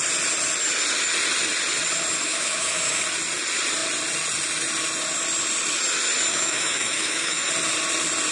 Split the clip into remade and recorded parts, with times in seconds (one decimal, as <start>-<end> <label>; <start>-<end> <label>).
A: 0.0-2.2 recorded; 2.2-3.0 remade; 3.0-6.3 recorded; 6.3-7.5 remade; 7.5-8.3 recorded